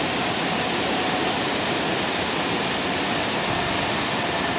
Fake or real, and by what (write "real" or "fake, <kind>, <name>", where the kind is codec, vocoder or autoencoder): real